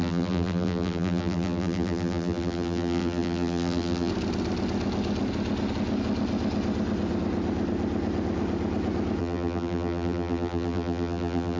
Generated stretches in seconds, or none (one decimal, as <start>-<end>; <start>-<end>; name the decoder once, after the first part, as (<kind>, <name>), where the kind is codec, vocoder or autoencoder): 0.0-4.1 (vocoder, BigVGAN v2); 9.2-11.6